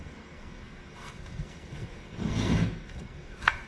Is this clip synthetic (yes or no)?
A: yes